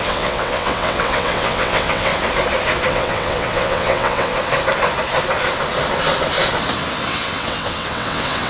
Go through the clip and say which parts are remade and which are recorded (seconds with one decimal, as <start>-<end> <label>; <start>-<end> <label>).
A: 0.0-2.1 remade; 2.1-2.9 recorded; 2.9-4.3 remade; 4.3-7.1 recorded; 7.1-8.5 remade